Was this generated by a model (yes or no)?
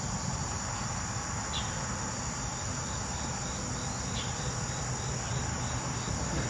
no